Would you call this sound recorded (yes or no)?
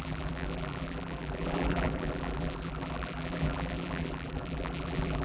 no